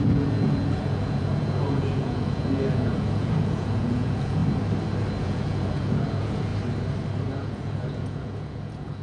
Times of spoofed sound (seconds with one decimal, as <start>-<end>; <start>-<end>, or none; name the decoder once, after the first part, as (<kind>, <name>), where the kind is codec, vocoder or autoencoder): 0.0-4.4 (vocoder, Vocos); 5.2-6.5; 7.3-9.0

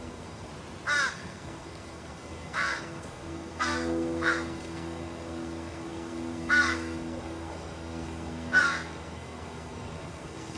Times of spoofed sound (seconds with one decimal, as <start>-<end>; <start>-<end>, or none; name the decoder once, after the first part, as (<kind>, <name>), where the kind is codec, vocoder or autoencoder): 0.0-0.5 (codec, SNAC); 1.1-10.6

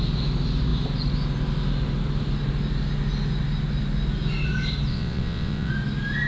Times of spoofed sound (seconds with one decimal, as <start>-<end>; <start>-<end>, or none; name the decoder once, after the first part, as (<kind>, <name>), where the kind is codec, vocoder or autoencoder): 4.9-5.7 (vocoder, WaveNeXt)

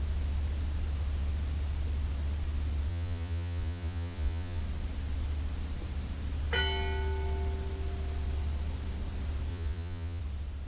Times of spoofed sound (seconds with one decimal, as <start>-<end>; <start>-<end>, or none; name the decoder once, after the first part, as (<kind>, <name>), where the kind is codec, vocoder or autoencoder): 2.9-4.6 (vocoder, Vocos); 9.5-10.2

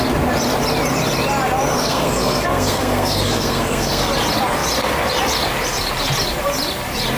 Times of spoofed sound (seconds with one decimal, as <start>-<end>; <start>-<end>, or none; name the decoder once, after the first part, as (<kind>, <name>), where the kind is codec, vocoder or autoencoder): 1.7-4.1 (codec, SNAC)

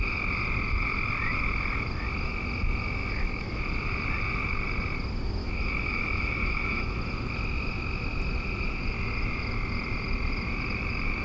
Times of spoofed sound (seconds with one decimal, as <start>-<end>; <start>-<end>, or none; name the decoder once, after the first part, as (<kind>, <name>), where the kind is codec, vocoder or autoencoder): 3.0-3.6 (autoencoder, DAC-VAE); 5.4-7.0

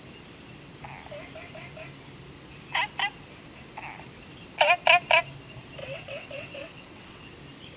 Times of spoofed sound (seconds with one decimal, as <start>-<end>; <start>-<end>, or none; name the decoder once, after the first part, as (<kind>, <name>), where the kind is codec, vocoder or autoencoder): 5.8-7.2 (vocoder, WaveNeXt)

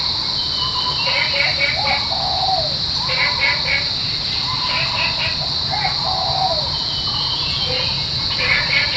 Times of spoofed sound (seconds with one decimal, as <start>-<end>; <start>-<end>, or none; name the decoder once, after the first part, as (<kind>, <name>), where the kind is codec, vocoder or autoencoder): none